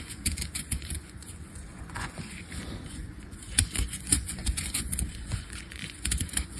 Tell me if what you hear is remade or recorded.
remade